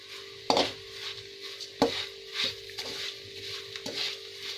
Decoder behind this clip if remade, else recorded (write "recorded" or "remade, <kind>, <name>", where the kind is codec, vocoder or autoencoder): recorded